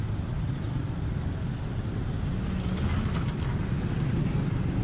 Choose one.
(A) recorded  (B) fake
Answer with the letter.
A